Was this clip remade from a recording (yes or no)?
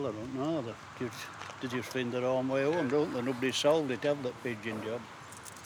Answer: no